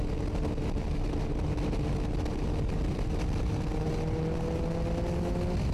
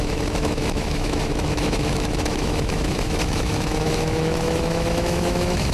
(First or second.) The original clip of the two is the first